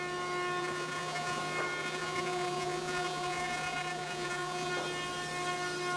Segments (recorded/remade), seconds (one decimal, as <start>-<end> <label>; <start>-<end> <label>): 0.0-0.6 recorded; 0.6-1.4 remade; 1.4-1.8 recorded; 1.8-4.7 remade; 4.7-6.0 recorded